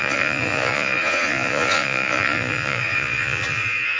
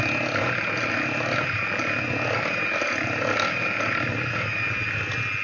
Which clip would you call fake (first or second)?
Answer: first